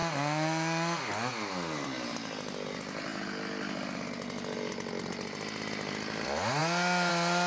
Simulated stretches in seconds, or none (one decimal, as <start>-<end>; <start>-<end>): none

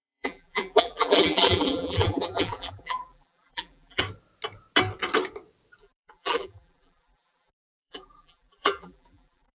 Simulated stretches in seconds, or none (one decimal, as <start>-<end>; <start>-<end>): 0.0-4.0; 5.8-9.6

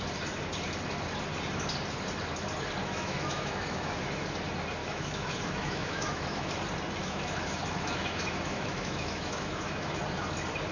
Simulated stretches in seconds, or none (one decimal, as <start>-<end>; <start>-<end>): 2.8-4.1; 4.8-6.6; 7.0-10.0

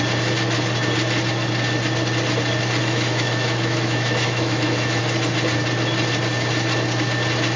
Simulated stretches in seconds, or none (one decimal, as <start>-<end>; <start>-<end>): 2.8-5.0

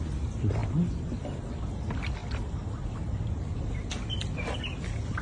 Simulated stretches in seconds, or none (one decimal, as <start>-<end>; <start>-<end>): none

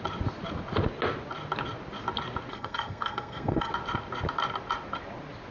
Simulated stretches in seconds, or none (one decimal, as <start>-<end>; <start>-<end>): 2.5-3.7

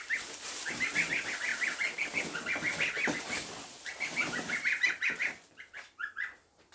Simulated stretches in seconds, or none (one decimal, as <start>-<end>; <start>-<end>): none